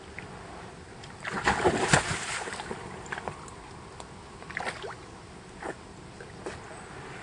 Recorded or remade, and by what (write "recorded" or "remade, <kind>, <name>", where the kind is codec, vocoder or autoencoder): recorded